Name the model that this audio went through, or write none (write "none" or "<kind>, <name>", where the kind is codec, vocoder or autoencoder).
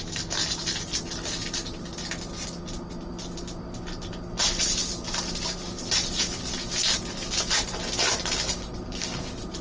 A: none